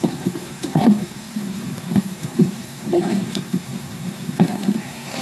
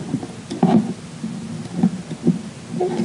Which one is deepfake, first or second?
first